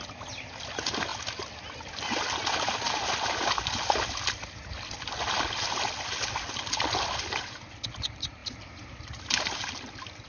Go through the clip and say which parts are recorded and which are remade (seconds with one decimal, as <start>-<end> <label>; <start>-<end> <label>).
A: 0.0-10.3 recorded